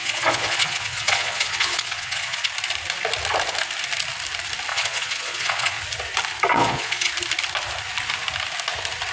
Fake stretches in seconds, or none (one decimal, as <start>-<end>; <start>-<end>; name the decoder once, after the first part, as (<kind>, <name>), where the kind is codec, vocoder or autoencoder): 0.0-2.5 (vocoder, Vocos); 4.7-5.8; 6.5-7.1